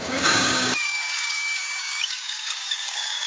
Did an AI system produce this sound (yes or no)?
yes